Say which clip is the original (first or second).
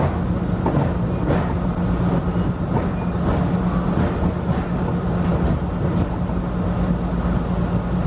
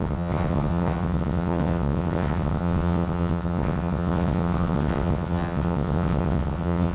first